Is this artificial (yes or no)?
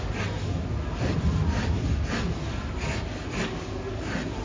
no